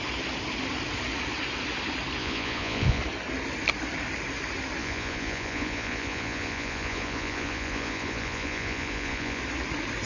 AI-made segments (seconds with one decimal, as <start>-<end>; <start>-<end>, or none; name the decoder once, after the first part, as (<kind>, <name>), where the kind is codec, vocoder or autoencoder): 2.2-3.0 (vocoder, Vocos); 4.8-9.4